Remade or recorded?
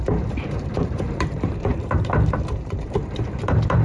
remade